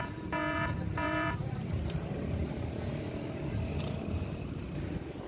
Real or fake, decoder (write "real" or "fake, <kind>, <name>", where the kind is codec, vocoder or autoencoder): fake, vocoder, BigVGAN v2